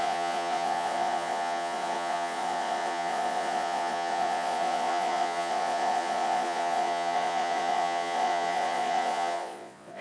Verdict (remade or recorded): remade